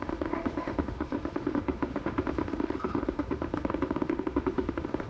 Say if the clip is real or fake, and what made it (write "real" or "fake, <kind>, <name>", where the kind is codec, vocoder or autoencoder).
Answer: fake, autoencoder, DAC-VAE